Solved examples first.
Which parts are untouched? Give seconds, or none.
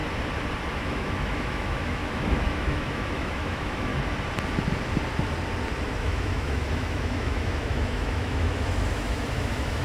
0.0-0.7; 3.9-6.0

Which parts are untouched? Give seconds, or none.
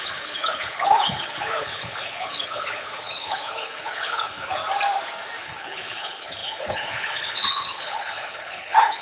4.6-5.4